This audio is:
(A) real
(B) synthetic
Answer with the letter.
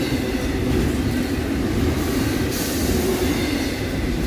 A